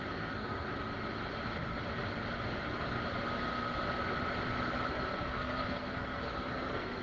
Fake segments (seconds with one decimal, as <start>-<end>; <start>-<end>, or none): 0.0-0.7; 4.9-7.0